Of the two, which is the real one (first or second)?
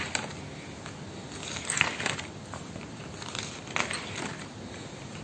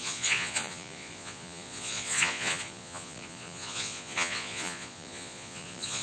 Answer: first